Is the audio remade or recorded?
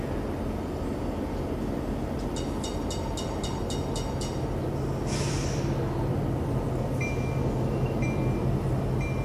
recorded